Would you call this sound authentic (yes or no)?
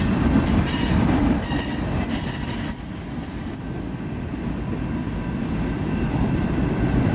yes